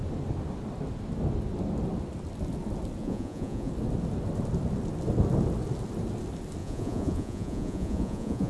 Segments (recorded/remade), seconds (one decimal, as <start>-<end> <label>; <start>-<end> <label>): 0.0-3.0 recorded; 3.0-3.7 remade; 3.7-6.6 recorded; 6.6-8.5 remade

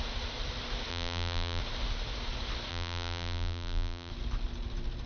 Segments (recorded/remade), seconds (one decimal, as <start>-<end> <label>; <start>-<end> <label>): 0.0-0.9 recorded; 0.9-1.6 remade; 1.6-2.7 recorded; 2.7-4.1 remade; 4.1-5.1 recorded

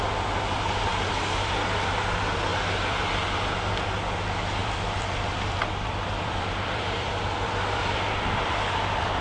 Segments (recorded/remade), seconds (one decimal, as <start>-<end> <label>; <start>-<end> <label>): 0.0-2.5 recorded; 2.5-3.1 remade; 3.1-4.6 recorded; 4.6-9.2 remade

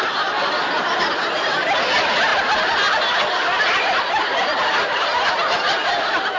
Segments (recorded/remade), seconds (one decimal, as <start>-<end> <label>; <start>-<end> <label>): 0.0-6.4 recorded

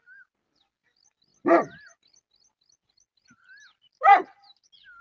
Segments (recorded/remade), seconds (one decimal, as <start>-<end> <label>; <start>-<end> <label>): 0.0-5.0 recorded